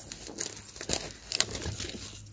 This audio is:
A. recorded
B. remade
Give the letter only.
A